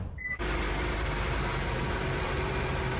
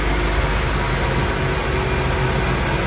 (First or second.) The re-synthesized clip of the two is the first